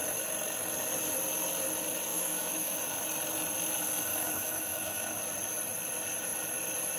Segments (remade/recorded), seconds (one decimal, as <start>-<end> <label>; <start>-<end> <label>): 0.0-2.1 recorded; 2.1-2.8 remade; 2.8-4.1 recorded; 4.1-5.2 remade; 5.2-7.0 recorded